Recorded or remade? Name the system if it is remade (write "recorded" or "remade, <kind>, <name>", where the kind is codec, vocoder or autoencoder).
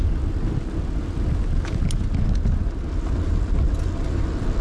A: recorded